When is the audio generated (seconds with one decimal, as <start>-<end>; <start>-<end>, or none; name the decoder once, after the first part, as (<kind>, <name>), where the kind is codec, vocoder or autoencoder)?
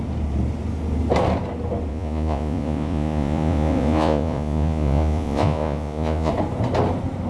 1.9-6.3 (vocoder, Vocos)